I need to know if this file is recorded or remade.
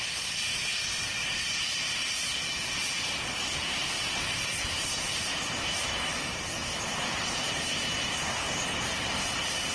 recorded